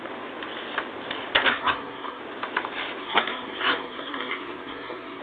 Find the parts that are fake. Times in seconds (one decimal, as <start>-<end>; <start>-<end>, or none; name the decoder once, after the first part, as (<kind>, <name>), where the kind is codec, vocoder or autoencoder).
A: 1.5-2.2 (codec, SNAC); 3.0-5.2